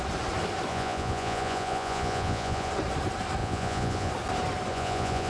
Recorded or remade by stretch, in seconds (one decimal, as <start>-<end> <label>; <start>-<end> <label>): 0.0-0.7 recorded; 0.7-2.7 remade; 2.7-3.4 recorded; 3.4-4.1 remade; 4.1-4.7 recorded; 4.7-5.3 remade